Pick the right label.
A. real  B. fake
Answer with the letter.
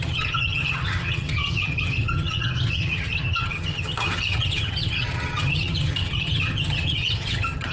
B